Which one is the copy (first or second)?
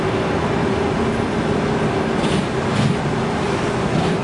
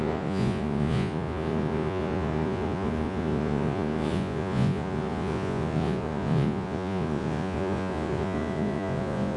second